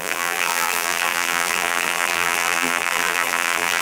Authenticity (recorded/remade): remade